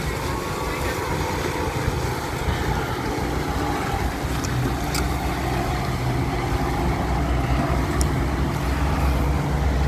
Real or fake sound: real